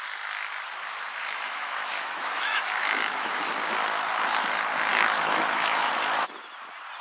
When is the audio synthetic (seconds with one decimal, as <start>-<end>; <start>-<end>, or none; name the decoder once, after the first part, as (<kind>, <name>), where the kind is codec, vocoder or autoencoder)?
1.2-3.4 (autoencoder, DAC-VAE); 4.9-5.9